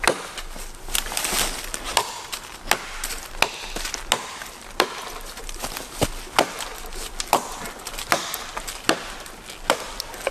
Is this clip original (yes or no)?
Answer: yes